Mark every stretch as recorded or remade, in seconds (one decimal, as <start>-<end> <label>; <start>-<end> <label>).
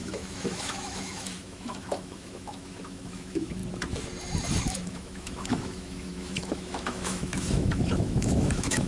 0.0-3.6 remade; 3.6-4.6 recorded; 4.6-8.9 remade